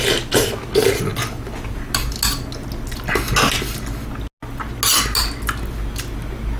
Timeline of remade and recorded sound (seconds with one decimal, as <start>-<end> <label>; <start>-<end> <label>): 0.0-6.6 recorded